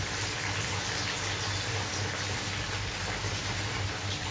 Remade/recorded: recorded